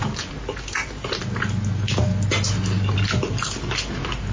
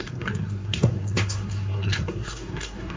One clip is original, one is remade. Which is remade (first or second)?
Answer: second